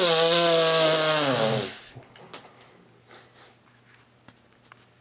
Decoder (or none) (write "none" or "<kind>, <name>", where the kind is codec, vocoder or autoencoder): none